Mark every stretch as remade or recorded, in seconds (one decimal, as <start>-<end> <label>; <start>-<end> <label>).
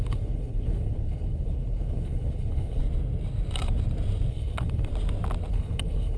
0.0-2.8 remade; 2.8-4.3 recorded; 4.3-4.9 remade; 4.9-5.5 recorded; 5.5-6.2 remade